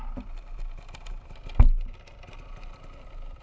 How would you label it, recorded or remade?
recorded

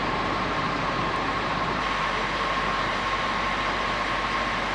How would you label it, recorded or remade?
remade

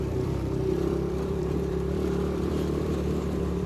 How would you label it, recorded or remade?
remade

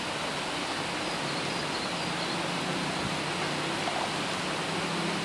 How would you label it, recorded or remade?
recorded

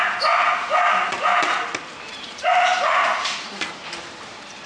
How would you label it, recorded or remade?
remade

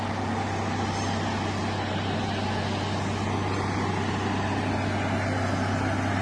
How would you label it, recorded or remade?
recorded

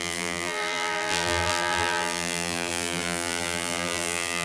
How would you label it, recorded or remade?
remade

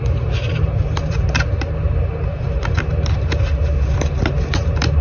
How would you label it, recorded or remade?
remade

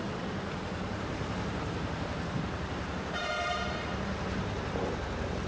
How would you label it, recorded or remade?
remade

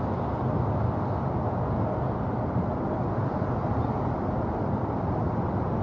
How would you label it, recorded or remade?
recorded